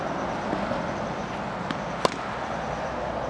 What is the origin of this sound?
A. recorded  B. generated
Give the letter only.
A